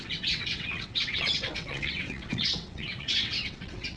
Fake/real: fake